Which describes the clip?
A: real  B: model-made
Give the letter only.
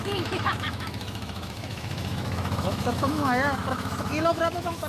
B